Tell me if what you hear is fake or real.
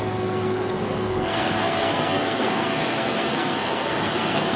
fake